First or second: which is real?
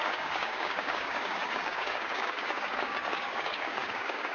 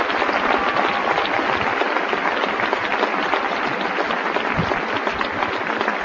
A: second